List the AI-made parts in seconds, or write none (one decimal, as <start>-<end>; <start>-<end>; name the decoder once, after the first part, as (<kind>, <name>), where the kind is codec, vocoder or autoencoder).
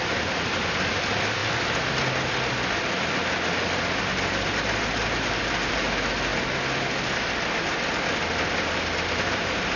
none